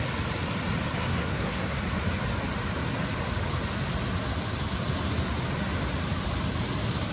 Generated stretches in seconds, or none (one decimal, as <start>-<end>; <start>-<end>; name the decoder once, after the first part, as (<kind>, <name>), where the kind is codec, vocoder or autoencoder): 1.0-1.8 (codec, SNAC)